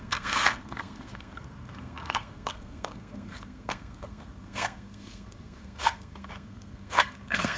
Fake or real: fake